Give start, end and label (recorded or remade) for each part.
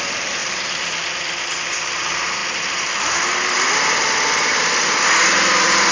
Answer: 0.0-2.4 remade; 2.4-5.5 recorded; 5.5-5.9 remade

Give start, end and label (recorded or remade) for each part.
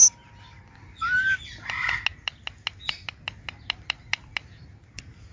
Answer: 0.0-5.3 recorded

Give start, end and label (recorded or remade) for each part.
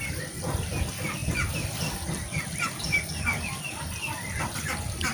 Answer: 0.0-1.2 remade; 1.2-4.3 recorded; 4.3-5.1 remade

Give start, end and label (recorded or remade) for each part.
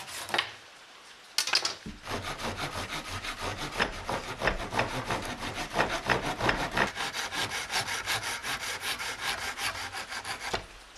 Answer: 0.0-3.5 recorded; 3.5-4.3 remade; 4.3-11.0 recorded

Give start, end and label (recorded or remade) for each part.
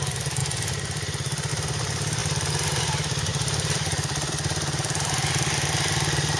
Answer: 0.0-3.3 recorded; 3.3-4.3 remade; 4.3-6.4 recorded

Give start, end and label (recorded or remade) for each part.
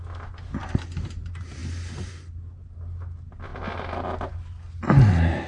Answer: 0.0-5.5 recorded